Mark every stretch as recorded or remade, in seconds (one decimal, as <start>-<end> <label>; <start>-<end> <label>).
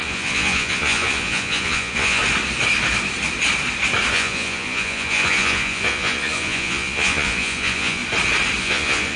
0.0-2.2 remade; 2.2-4.1 recorded; 4.1-8.0 remade; 8.0-8.6 recorded; 8.6-9.2 remade